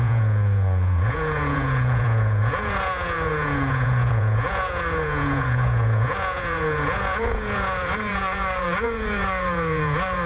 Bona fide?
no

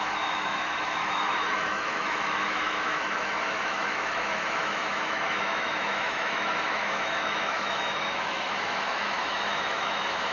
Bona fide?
no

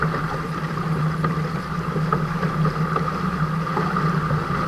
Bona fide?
yes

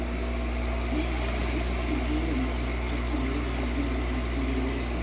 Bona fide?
yes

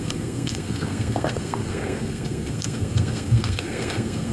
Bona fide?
no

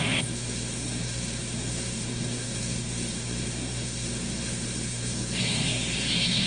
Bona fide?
no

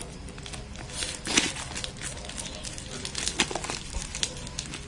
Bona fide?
yes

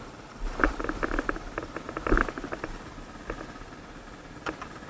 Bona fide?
yes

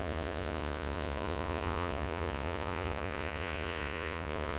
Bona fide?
no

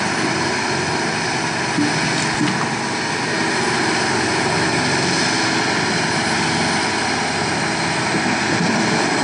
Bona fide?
yes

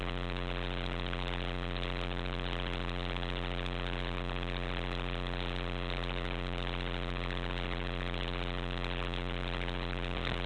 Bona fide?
yes